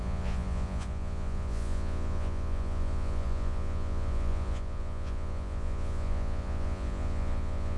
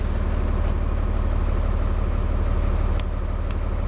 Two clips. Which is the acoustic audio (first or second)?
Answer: second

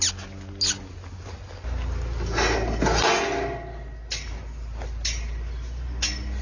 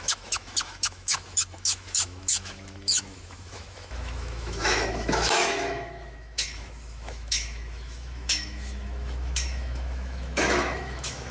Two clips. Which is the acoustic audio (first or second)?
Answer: first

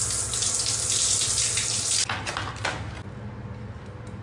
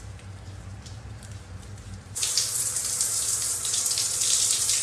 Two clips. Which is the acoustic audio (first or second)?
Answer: first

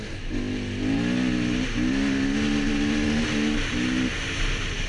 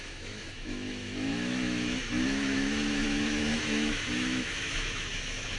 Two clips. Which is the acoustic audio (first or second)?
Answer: first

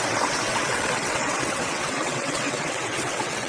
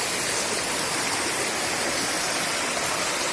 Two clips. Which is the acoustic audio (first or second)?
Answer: second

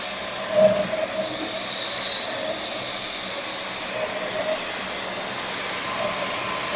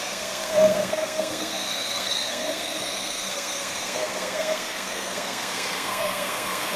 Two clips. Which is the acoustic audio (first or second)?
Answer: first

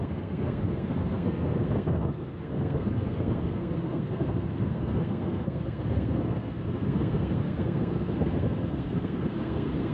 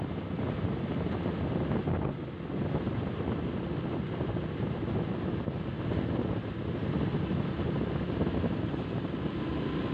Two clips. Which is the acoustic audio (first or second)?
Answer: second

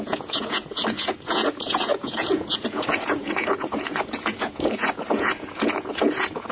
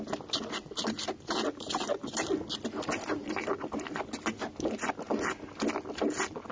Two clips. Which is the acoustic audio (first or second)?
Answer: second